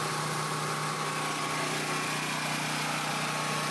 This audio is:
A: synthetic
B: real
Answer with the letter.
B